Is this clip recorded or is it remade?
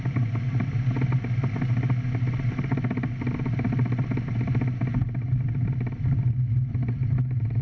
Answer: recorded